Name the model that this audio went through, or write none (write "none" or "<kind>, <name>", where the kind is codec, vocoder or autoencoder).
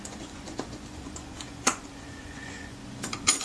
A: vocoder, Vocos